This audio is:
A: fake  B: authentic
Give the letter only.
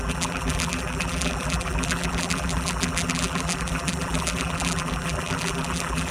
A